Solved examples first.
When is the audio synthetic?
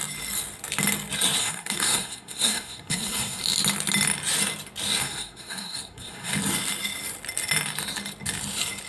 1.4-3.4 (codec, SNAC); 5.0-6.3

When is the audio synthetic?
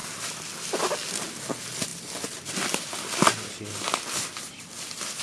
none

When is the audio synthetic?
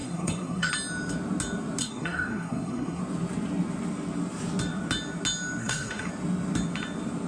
0.0-0.7 (codec, SNAC); 1.8-3.0; 5.6-6.1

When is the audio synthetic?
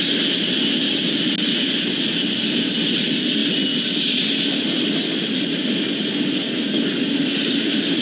none